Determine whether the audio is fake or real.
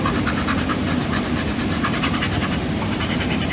fake